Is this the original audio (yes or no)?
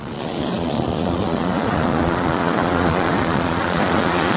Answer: no